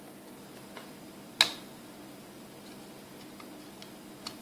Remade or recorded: recorded